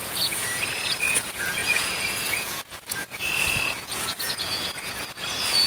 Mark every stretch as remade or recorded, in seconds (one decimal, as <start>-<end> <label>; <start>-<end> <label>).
0.0-5.7 remade